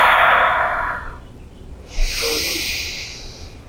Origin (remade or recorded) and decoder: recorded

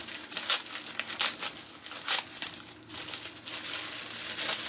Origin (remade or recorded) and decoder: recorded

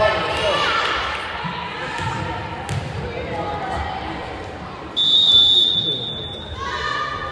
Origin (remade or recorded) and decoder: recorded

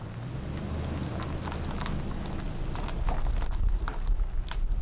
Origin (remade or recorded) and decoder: recorded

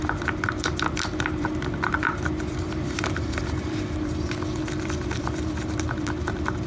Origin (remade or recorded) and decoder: remade, vocoder, BigVGAN v2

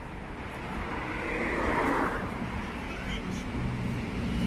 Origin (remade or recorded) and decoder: recorded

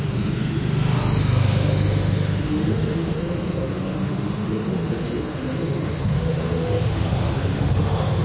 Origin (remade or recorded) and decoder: remade, autoencoder, DAC-VAE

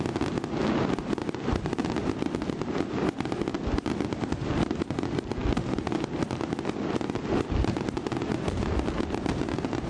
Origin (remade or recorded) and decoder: recorded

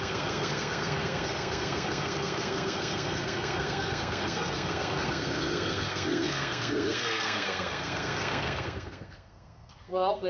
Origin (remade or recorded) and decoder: remade, codec, SNAC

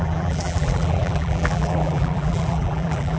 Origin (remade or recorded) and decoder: remade, vocoder, BigVGAN v2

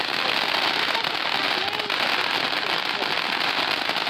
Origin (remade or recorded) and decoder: remade, vocoder, BigVGAN v2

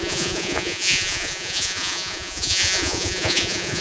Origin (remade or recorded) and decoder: remade, vocoder, Vocos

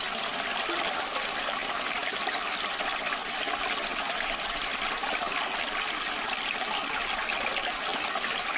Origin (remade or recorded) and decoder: recorded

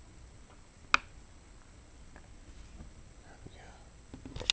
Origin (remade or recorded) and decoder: recorded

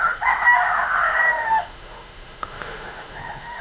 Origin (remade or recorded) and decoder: remade, autoencoder, DAC-VAE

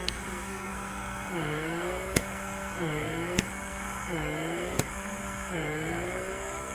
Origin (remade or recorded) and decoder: remade, codec, SNAC